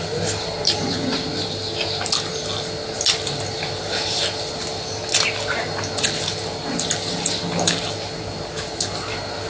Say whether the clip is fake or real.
real